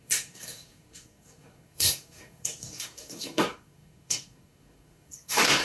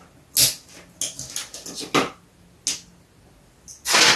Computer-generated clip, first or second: first